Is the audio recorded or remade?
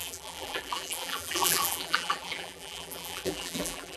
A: remade